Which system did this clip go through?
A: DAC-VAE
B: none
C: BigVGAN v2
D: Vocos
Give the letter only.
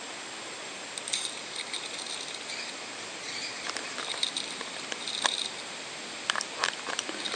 C